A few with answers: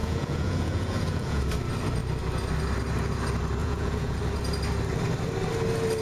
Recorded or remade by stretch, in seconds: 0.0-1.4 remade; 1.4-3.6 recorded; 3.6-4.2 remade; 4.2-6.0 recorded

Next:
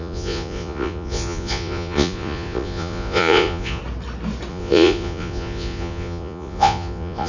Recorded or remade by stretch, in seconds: 0.0-3.8 remade; 3.8-4.5 recorded; 4.5-7.3 remade

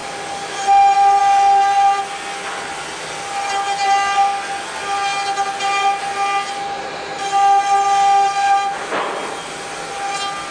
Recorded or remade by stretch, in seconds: 0.0-10.5 recorded

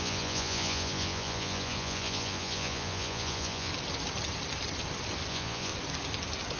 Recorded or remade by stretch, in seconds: 0.0-3.7 remade; 3.7-5.3 recorded; 5.3-5.7 remade; 5.7-6.6 recorded

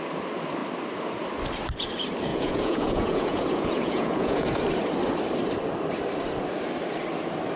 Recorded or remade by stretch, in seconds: 0.0-2.3 recorded; 2.3-4.6 remade; 4.6-7.6 recorded

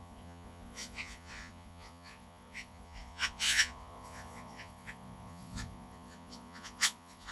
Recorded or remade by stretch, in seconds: 0.0-7.3 remade

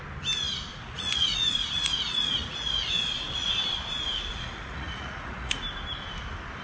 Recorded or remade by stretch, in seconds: 0.0-0.7 recorded; 0.7-3.5 remade; 3.5-4.3 recorded; 4.3-5.6 remade; 5.6-6.6 recorded